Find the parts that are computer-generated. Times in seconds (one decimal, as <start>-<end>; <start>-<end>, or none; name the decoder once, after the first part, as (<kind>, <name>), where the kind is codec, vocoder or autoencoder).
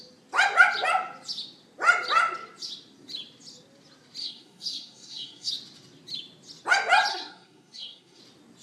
4.2-5.5 (codec, SNAC); 7.1-8.2